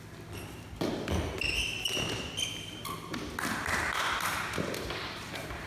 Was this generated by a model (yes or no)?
no